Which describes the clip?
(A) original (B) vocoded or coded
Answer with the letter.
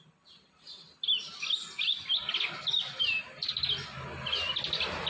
A